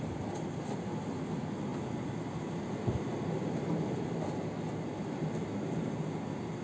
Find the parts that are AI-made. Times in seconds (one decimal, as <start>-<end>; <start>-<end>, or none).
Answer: none